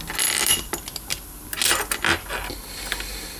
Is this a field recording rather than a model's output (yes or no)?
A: yes